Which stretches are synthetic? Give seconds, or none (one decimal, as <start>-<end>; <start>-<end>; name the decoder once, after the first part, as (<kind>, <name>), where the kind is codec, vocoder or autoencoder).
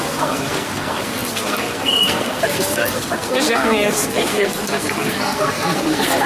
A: 0.0-6.3 (codec, SNAC)